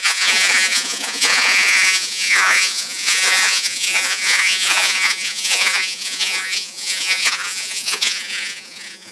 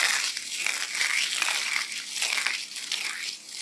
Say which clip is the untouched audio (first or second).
second